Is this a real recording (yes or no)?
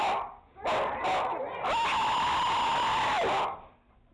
yes